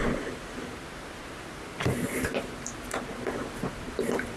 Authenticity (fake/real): real